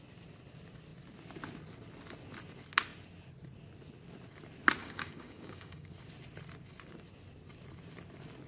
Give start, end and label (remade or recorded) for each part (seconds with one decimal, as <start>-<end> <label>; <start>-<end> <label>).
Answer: 0.0-4.8 recorded; 4.8-5.9 remade; 5.9-8.5 recorded